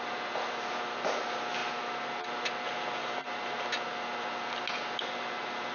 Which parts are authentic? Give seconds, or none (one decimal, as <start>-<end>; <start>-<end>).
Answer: 0.0-5.7